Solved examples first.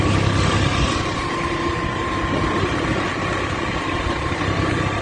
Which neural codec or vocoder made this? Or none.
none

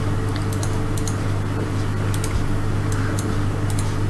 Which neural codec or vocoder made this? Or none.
none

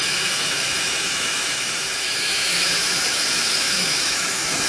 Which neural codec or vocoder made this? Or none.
autoencoder, DAC-VAE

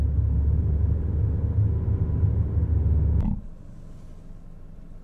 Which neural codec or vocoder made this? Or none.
none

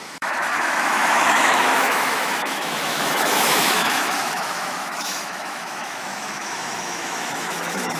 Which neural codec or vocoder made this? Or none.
autoencoder, DAC-VAE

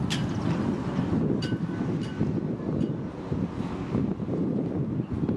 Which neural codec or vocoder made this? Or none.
none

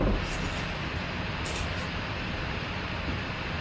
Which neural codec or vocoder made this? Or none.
none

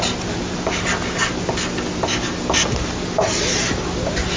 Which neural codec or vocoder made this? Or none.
none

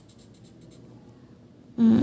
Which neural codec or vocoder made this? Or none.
none